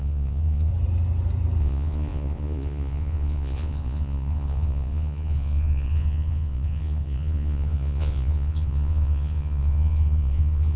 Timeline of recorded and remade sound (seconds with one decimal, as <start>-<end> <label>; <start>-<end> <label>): 0.0-0.7 remade; 0.7-1.6 recorded; 1.6-10.8 remade